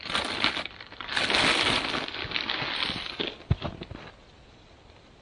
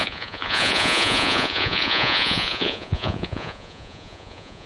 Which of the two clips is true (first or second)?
first